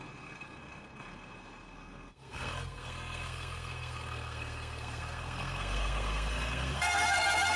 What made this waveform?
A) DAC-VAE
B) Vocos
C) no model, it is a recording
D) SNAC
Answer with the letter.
D